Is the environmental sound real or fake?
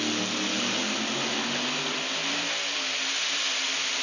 real